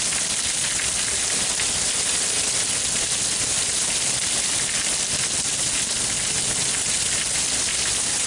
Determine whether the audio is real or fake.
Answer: real